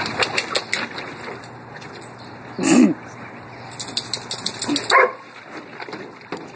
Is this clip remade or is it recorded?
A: recorded